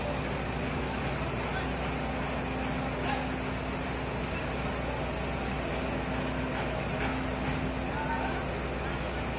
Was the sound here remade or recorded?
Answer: recorded